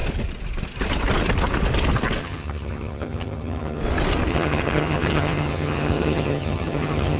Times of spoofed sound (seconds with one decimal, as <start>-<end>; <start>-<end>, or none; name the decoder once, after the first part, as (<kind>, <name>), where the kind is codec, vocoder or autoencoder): 2.2-3.8 (vocoder, HiFi-GAN); 4.3-7.2